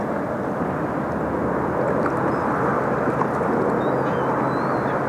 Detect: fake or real real